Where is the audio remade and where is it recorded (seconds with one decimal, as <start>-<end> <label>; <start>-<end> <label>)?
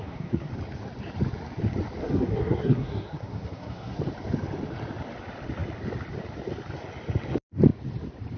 0.0-0.5 remade; 0.5-2.0 recorded; 2.0-4.0 remade; 4.0-8.4 recorded